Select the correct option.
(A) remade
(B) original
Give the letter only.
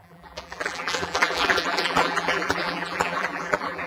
A